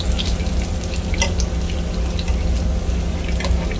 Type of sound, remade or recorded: recorded